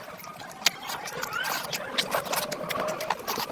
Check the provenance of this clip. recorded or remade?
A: recorded